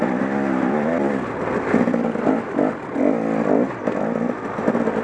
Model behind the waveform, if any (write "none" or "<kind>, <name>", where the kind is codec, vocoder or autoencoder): none